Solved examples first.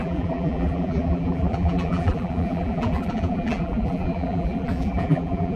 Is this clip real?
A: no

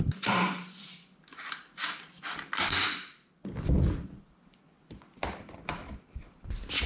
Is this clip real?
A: no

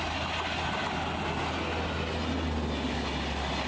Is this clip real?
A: yes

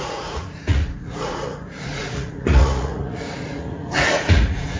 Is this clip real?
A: no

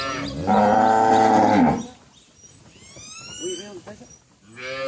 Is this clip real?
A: yes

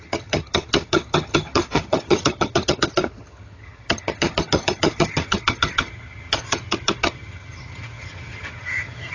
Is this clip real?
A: no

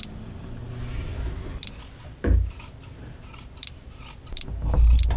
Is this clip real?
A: yes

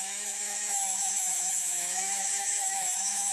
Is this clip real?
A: no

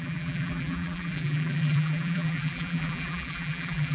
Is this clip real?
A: no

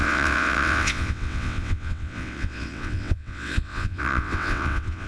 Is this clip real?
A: no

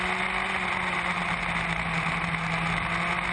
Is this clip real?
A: yes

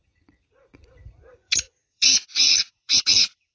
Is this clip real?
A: no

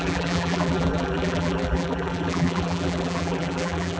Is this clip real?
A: no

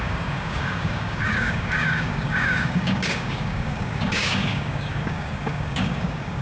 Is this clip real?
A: no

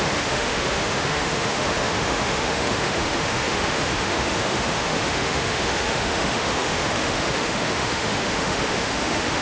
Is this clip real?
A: no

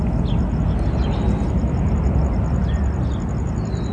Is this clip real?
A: yes